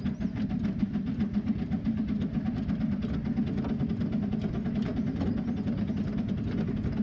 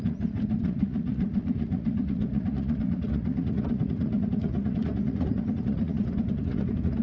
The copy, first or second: second